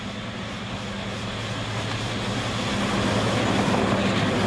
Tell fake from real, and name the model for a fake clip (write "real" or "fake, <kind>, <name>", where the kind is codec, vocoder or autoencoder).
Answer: real